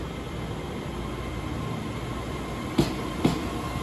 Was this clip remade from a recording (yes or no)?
no